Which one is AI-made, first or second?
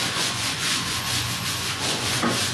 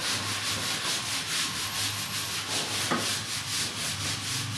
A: first